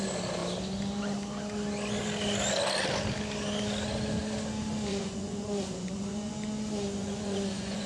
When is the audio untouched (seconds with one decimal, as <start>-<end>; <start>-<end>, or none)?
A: 0.0-4.9; 6.3-7.0